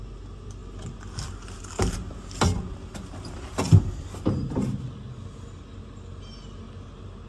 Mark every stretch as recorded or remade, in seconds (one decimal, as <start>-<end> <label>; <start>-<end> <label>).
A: 0.0-7.3 recorded